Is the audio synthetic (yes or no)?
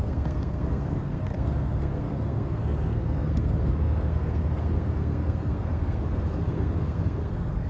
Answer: yes